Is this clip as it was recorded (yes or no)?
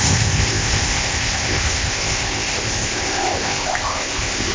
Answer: no